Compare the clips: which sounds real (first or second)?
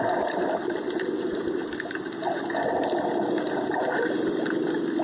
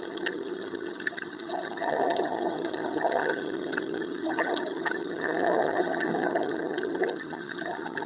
first